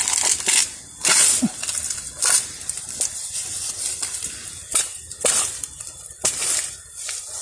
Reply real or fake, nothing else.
real